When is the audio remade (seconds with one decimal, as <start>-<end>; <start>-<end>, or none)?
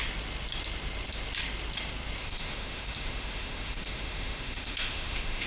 2.2-5.5